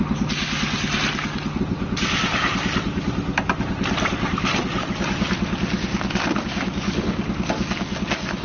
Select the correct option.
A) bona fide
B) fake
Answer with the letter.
A